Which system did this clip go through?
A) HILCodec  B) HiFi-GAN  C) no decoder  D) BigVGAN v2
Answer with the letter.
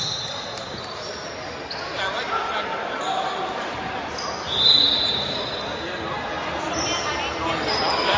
C